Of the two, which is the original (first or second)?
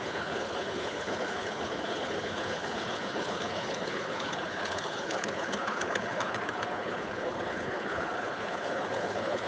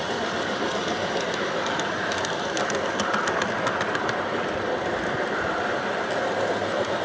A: second